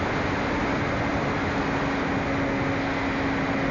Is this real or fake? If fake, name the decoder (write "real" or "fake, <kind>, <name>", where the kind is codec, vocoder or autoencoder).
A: real